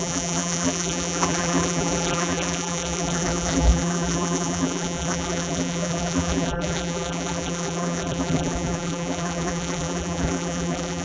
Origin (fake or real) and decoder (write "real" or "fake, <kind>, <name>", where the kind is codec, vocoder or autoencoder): fake, vocoder, BigVGAN v2